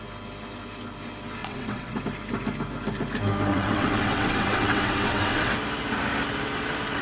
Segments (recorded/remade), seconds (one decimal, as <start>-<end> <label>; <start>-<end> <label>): 0.0-1.4 recorded; 1.4-2.0 remade; 2.0-3.5 recorded; 3.5-5.5 remade; 5.5-7.0 recorded